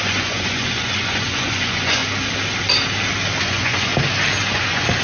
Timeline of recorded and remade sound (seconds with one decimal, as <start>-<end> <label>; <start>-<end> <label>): 0.0-2.0 remade; 2.0-3.4 recorded; 3.4-3.9 remade; 3.9-4.5 recorded; 4.5-5.0 remade